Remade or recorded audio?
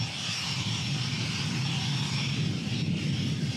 recorded